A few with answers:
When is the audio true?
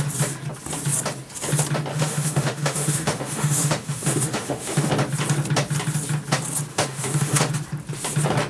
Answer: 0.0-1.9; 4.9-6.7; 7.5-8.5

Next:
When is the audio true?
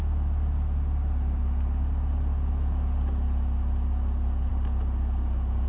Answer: 0.0-5.7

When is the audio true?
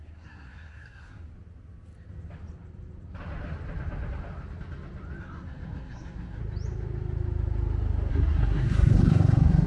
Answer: 1.3-5.2; 6.4-8.1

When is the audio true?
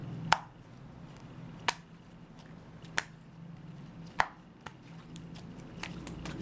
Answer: 0.0-6.4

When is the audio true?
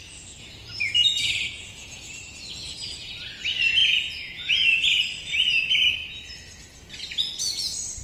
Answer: 0.0-0.6; 2.1-3.8; 4.5-8.0